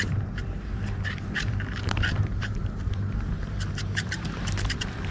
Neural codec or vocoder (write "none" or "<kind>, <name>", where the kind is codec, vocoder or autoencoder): vocoder, BigVGAN v2